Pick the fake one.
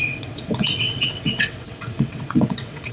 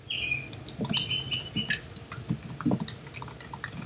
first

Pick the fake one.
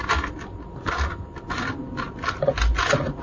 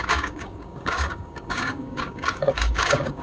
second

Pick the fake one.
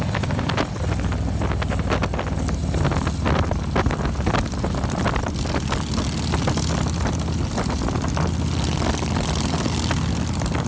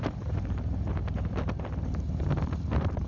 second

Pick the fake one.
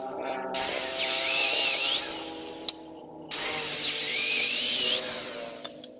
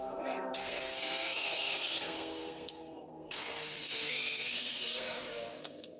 second